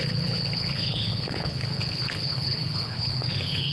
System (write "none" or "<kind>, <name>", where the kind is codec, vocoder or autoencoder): codec, HILCodec